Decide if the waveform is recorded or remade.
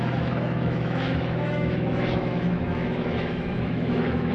remade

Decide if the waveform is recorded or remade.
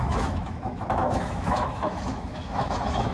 remade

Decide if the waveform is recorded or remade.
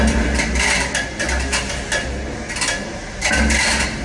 recorded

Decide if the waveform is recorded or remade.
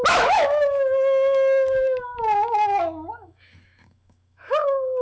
remade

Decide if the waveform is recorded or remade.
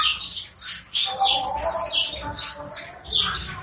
recorded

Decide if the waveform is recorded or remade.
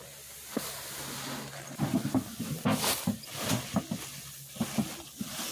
recorded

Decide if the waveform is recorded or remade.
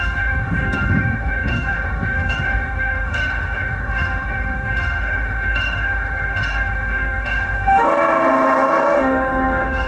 remade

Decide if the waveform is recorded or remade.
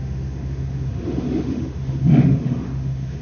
remade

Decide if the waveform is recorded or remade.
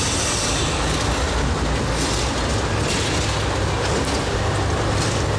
recorded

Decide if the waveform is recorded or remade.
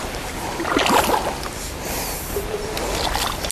recorded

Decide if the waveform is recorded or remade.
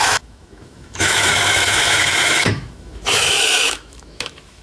remade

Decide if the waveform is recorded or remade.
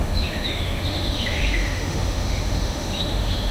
remade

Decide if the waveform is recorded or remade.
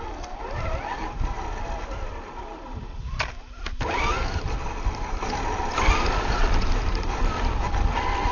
recorded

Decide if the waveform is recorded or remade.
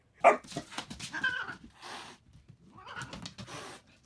recorded